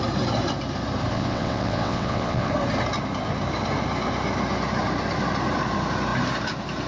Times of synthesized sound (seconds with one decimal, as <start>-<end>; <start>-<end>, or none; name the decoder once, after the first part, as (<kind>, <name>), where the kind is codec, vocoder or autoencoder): 1.1-2.5 (vocoder, WaveNeXt)